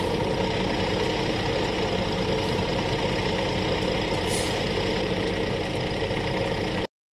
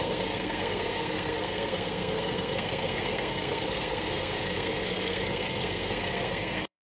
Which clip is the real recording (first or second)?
first